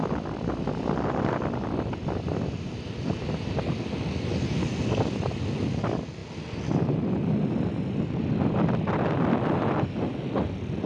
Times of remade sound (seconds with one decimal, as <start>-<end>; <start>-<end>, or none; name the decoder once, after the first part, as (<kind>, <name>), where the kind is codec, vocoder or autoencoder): none